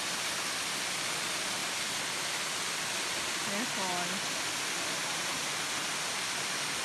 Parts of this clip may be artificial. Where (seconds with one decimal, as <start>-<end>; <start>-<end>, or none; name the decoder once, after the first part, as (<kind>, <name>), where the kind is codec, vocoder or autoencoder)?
none